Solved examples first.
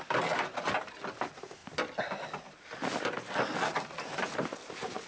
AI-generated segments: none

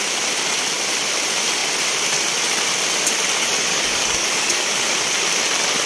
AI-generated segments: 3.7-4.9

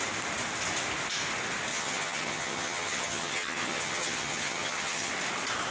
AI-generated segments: 1.7-5.1

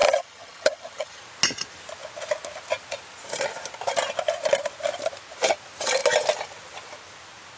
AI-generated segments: 0.0-1.2

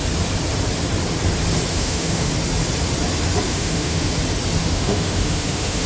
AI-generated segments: 1.7-2.3; 3.5-4.1; 4.6-5.9